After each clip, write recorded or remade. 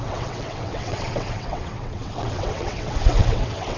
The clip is remade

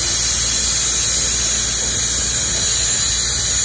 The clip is recorded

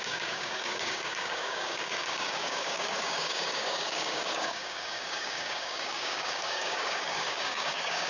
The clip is remade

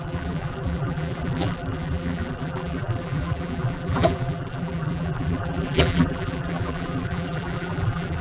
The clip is remade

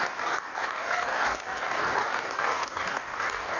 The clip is remade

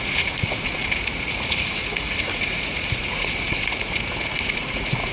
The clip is remade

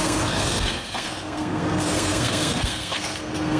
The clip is remade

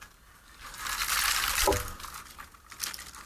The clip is recorded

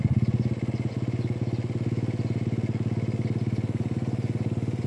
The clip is recorded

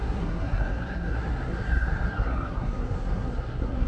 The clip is remade